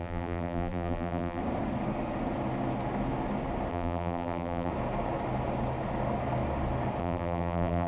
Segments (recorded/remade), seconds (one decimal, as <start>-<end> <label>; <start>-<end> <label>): 0.0-1.4 remade; 1.4-3.7 recorded; 3.7-4.7 remade; 4.7-7.0 recorded; 7.0-7.9 remade